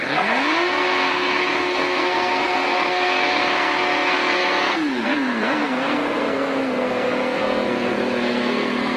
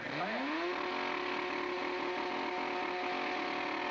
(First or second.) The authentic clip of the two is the second